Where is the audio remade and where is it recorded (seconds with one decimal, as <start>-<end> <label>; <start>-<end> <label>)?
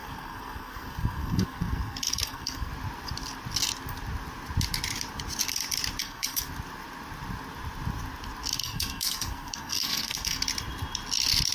0.0-2.7 remade; 2.7-6.0 recorded; 6.0-6.5 remade; 6.5-8.6 recorded; 8.6-10.4 remade; 10.4-11.5 recorded